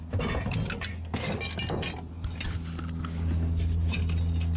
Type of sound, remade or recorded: recorded